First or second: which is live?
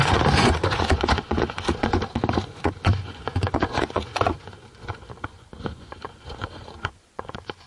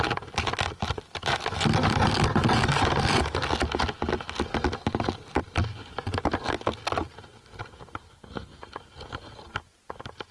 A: second